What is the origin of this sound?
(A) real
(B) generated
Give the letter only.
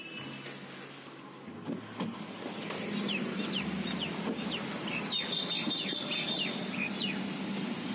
A